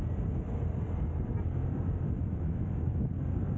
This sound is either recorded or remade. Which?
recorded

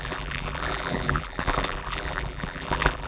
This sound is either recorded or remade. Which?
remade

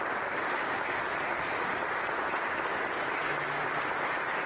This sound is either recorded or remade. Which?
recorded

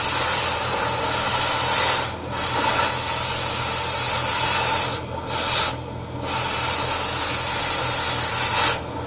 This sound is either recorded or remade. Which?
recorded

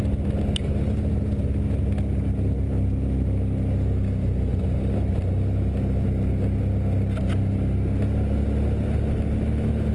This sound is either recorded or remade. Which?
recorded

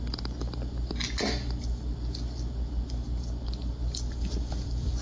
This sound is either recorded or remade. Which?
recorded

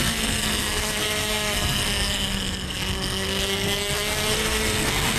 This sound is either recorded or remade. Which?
remade